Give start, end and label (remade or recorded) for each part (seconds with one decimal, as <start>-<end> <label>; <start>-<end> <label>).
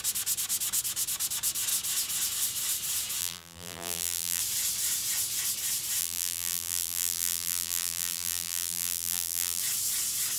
0.0-3.2 recorded; 3.2-4.4 remade; 4.4-6.0 recorded; 6.0-9.6 remade; 9.6-10.4 recorded